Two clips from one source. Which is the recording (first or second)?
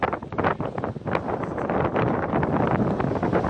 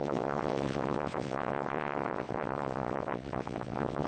first